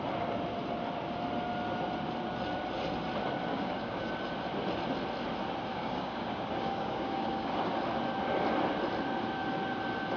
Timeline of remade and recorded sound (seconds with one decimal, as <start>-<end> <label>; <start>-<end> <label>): 0.0-3.5 recorded; 3.5-4.1 remade; 4.1-5.7 recorded; 5.7-7.7 remade; 7.7-10.2 recorded